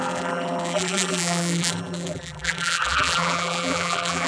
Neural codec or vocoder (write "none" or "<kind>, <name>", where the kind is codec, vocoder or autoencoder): vocoder, BigVGAN v2